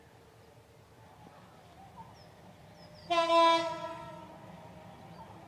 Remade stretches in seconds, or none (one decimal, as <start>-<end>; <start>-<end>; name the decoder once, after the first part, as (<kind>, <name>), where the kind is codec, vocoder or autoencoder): 3.0-4.2 (codec, DAC)